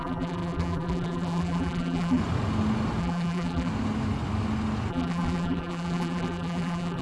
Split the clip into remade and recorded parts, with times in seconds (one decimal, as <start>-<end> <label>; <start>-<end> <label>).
0.0-2.2 remade; 2.2-3.0 recorded; 3.0-3.7 remade; 3.7-4.9 recorded; 4.9-7.0 remade